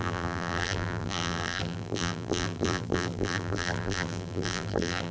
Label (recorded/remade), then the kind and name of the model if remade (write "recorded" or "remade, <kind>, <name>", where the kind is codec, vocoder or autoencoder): remade, vocoder, BigVGAN v2